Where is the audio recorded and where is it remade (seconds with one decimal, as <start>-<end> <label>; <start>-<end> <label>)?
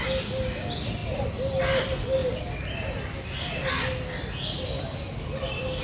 0.0-5.8 recorded